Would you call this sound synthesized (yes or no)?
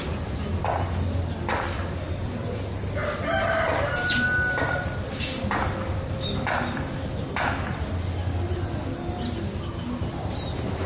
no